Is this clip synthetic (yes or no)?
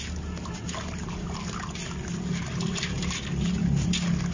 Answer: no